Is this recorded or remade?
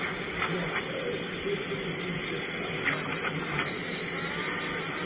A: recorded